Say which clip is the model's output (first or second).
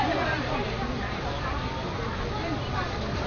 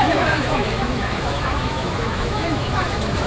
second